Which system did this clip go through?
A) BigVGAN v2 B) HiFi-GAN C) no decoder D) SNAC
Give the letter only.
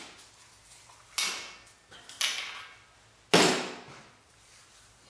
C